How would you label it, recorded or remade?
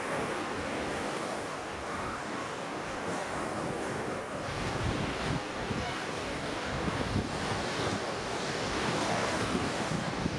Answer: remade